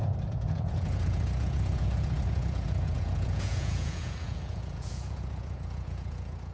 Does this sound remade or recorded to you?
remade